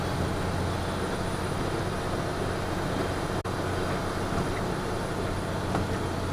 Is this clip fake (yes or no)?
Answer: no